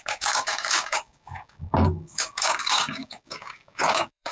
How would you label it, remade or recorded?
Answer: remade